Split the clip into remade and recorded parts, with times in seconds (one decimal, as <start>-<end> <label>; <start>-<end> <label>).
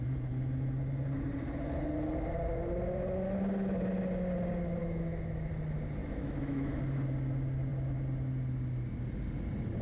0.0-4.8 recorded; 4.8-5.5 remade; 5.5-6.0 recorded; 6.0-6.8 remade; 6.8-9.8 recorded